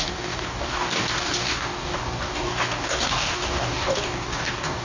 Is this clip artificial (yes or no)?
yes